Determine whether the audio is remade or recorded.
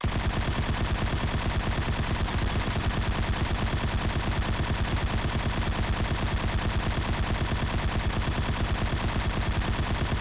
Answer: recorded